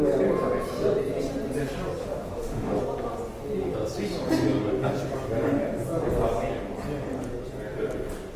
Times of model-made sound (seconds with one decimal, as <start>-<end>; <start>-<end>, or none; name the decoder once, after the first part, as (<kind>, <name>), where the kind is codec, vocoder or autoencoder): 2.0-2.8 (autoencoder, DAC-VAE)